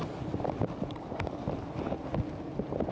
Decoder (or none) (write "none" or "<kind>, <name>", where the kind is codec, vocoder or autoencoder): none